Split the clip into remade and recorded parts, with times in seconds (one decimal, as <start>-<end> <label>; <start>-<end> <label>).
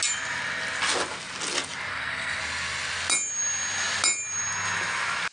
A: 0.0-1.9 recorded; 1.9-2.4 remade; 2.4-5.3 recorded